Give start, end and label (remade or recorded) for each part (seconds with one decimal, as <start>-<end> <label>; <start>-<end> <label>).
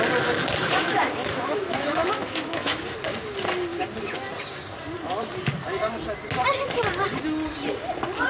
0.0-0.6 recorded; 0.6-2.8 remade; 2.8-8.3 recorded